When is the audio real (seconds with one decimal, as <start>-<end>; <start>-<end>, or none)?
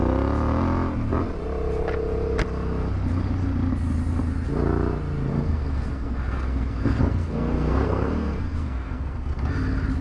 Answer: 0.0-5.3; 9.4-10.0